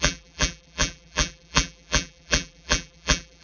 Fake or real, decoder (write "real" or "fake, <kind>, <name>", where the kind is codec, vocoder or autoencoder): fake, vocoder, BigVGAN v2